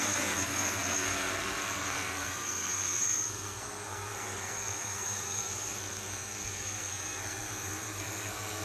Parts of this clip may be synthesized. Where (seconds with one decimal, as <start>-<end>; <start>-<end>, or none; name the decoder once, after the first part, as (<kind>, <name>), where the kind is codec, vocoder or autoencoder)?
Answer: 0.0-8.6 (codec, SNAC)